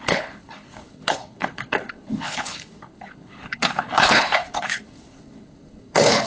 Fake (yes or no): yes